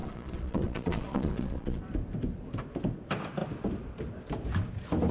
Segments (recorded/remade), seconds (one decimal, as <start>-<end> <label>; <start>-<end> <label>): 0.0-1.8 remade; 1.8-5.1 recorded